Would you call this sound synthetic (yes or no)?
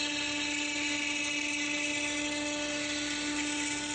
no